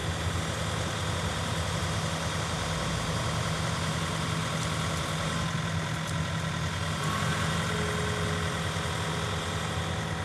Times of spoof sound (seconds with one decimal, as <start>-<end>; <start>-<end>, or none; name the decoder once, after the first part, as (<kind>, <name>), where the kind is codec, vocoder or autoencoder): none